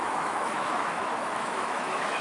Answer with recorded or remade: remade